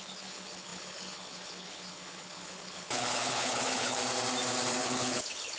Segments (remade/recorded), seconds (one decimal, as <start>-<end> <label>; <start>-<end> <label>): 0.0-4.0 remade; 4.0-4.8 recorded; 4.8-5.6 remade